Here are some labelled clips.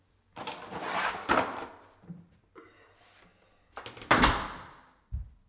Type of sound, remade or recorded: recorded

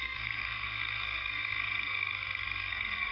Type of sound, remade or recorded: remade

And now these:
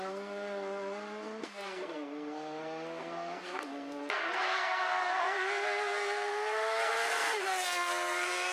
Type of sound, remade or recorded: remade